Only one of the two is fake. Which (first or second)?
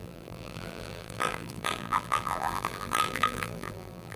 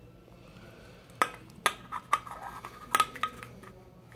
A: first